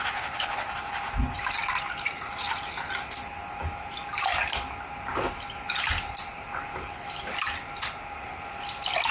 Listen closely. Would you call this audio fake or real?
real